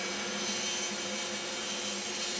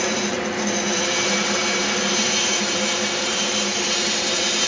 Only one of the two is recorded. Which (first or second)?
first